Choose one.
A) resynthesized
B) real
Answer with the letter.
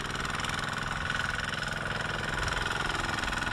B